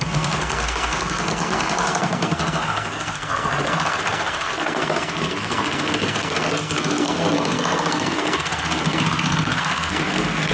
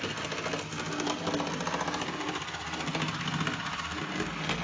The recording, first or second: second